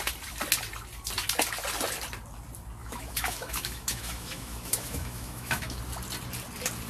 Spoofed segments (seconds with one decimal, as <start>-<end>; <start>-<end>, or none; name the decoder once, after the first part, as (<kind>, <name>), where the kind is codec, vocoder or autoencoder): 2.8-5.8 (autoencoder, DAC-VAE)